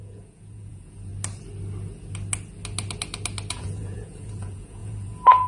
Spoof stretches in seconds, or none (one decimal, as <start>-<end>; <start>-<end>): 0.0-1.1; 3.5-5.5